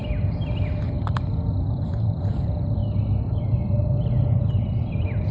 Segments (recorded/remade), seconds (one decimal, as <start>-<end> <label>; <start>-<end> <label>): 0.0-1.6 recorded; 1.6-2.8 remade; 2.8-4.5 recorded; 4.5-5.3 remade